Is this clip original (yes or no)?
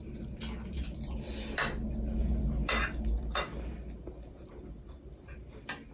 yes